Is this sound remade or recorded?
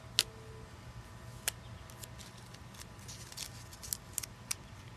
recorded